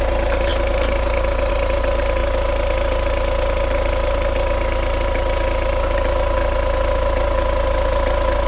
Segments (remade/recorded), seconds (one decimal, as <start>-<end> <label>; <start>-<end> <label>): 0.0-8.5 recorded